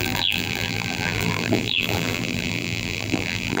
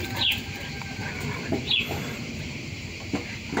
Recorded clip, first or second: second